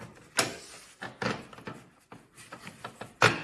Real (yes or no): yes